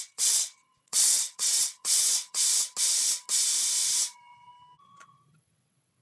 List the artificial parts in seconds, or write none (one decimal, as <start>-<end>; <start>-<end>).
0.0-2.4; 4.8-6.0